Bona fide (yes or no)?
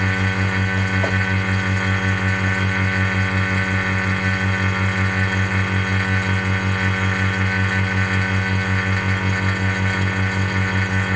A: yes